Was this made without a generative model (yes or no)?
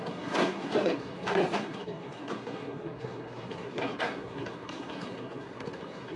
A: no